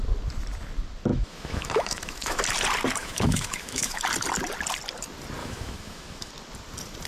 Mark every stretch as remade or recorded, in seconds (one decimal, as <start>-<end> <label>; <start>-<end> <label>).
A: 0.0-1.1 recorded; 1.1-2.4 remade; 2.4-3.0 recorded; 3.0-4.0 remade; 4.0-5.4 recorded; 5.4-6.3 remade; 6.3-7.1 recorded

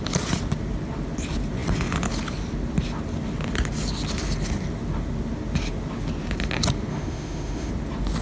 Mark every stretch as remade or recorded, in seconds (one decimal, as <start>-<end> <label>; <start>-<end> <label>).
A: 0.0-6.9 recorded; 6.9-7.7 remade; 7.7-8.2 recorded

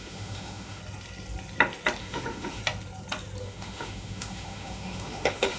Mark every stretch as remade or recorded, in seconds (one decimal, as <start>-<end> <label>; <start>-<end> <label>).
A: 0.0-0.8 remade; 0.8-2.0 recorded; 2.0-2.6 remade; 2.6-3.4 recorded; 3.4-5.6 remade

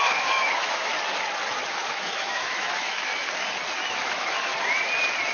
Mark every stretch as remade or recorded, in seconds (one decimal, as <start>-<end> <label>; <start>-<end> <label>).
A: 0.0-0.9 remade; 0.9-1.8 recorded; 1.8-3.1 remade; 3.1-3.9 recorded; 3.9-4.5 remade; 4.5-5.3 recorded

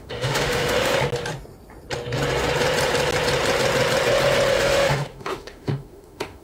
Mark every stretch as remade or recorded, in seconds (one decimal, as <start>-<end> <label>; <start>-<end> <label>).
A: 0.0-0.9 remade; 0.9-4.5 recorded; 4.5-6.4 remade

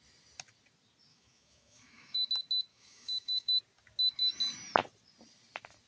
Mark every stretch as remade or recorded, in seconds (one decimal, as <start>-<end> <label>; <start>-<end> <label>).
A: 0.0-1.1 recorded; 1.1-2.3 remade; 2.3-2.7 recorded; 2.7-3.6 remade; 3.6-5.9 recorded

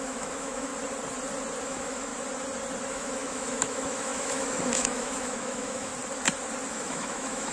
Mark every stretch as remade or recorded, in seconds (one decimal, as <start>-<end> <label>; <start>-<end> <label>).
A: 0.0-0.7 remade; 0.7-1.6 recorded; 1.6-2.1 remade; 2.1-2.9 recorded; 2.9-5.9 remade; 5.9-6.7 recorded; 6.7-7.5 remade